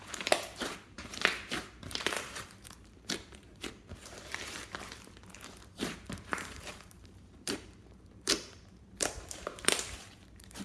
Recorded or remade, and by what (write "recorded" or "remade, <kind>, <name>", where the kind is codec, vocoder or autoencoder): remade, vocoder, BigVGAN v2